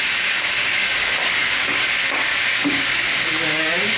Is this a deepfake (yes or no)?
yes